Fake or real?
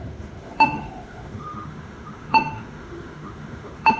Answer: fake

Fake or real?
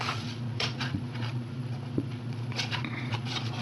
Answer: fake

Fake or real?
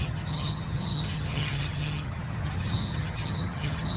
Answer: fake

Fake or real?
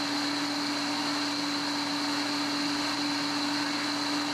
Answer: real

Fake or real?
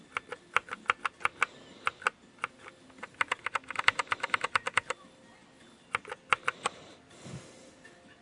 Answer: real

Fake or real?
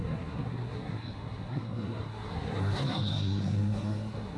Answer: fake